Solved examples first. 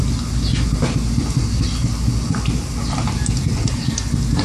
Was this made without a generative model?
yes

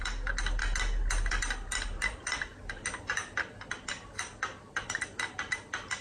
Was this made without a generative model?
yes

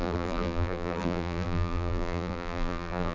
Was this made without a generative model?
no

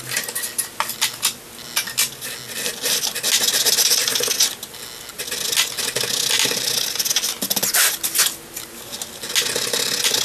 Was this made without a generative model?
yes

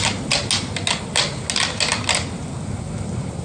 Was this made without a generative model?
yes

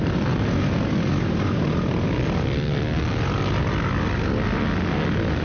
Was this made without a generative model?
yes